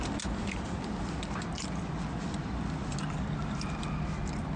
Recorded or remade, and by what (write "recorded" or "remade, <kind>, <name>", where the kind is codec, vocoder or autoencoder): recorded